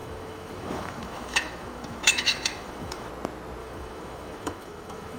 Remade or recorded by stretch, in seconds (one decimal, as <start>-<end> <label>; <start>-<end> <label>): 0.0-3.1 remade; 3.1-3.6 recorded; 3.6-5.2 remade